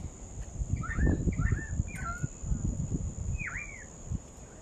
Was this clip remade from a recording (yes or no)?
no